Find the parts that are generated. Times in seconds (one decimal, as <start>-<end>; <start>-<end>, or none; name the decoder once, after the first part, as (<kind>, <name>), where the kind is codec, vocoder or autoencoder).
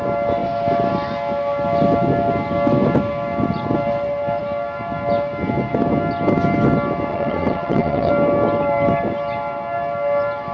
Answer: 7.1-8.1 (vocoder, WaveNeXt)